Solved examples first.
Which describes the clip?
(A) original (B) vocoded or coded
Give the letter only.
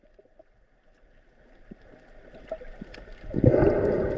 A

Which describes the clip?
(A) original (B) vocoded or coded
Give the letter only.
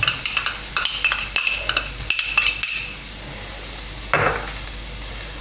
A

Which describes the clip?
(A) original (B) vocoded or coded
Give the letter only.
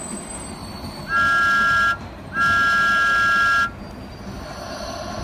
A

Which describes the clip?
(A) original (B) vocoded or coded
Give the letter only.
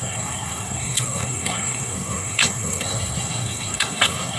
B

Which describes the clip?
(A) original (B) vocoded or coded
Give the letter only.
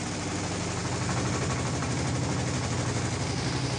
A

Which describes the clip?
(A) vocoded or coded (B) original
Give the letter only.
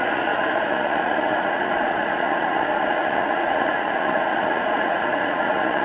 A